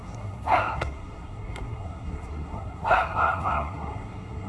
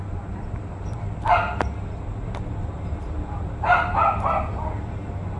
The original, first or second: second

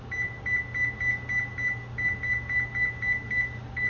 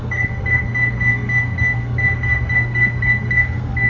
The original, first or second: first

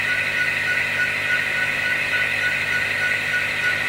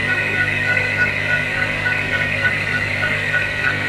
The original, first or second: first